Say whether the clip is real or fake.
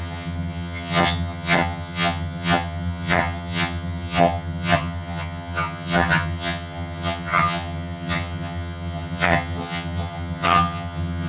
fake